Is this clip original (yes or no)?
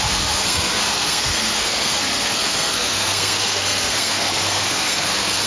no